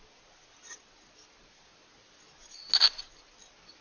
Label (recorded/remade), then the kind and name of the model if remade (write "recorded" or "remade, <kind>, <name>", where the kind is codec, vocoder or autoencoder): recorded